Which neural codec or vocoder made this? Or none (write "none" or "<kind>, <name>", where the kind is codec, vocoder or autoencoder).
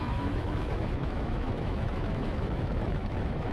autoencoder, DAC-VAE